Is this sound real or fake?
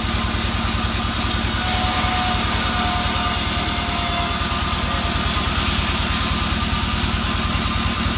real